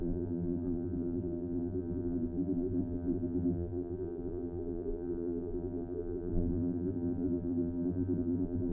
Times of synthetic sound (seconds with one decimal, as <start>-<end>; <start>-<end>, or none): 0.0-8.7